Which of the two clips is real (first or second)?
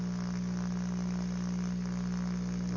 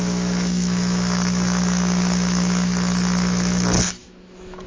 first